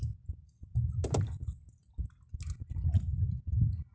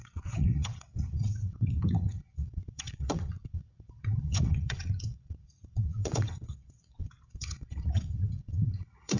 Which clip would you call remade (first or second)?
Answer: second